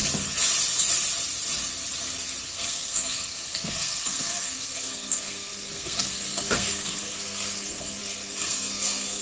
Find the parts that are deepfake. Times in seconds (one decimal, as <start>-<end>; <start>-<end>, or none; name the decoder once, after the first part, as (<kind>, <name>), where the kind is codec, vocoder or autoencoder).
2.5-9.2 (codec, SNAC)